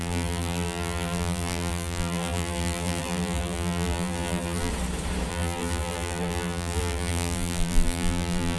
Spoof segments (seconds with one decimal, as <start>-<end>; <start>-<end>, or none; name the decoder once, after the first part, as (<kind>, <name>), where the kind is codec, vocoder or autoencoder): 0.0-4.7 (vocoder, BigVGAN v2); 5.3-8.6